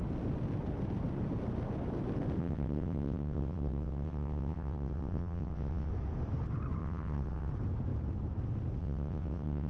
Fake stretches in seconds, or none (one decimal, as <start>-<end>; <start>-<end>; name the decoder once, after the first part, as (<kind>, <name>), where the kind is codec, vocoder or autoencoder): 2.4-5.9 (vocoder, WaveNeXt); 6.8-7.5; 8.8-9.7